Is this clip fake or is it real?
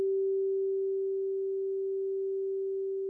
real